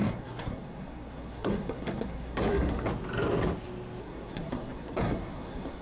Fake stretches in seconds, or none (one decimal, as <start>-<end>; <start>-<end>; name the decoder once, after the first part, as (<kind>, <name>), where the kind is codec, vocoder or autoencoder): 0.0-2.9 (codec, SNAC); 4.0-5.8